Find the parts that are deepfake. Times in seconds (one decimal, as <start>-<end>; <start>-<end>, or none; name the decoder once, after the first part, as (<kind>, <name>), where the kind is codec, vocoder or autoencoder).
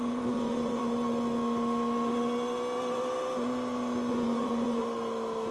0.0-0.8 (vocoder, Vocos); 4.1-4.8